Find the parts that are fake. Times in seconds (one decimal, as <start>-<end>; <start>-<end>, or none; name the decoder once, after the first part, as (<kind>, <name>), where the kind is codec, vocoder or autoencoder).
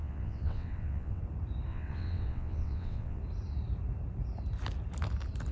0.0-1.2 (vocoder, WaveNeXt); 1.7-3.2